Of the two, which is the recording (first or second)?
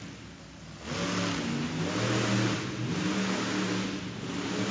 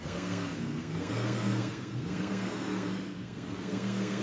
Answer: first